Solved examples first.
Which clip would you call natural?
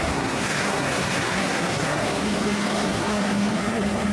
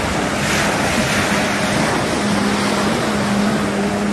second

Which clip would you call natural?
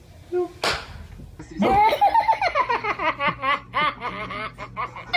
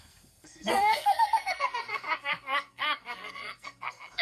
first